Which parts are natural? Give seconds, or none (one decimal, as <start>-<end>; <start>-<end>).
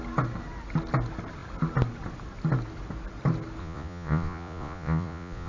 0.0-3.6